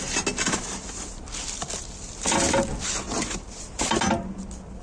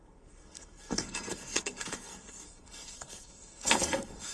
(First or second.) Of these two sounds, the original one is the first